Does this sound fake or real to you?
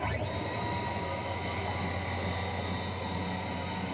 real